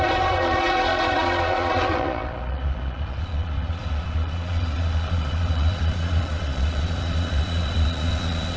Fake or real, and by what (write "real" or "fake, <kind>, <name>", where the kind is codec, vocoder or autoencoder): fake, vocoder, Vocos